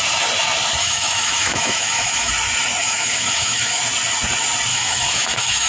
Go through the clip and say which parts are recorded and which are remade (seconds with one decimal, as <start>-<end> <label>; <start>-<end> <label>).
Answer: 0.0-0.8 recorded; 0.8-2.3 remade; 2.3-2.8 recorded; 2.8-3.8 remade; 3.8-4.7 recorded; 4.7-5.7 remade